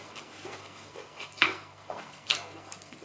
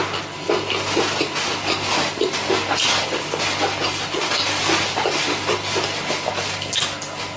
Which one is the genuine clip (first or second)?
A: second